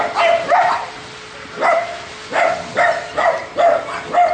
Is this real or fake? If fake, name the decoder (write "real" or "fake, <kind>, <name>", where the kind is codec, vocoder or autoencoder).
real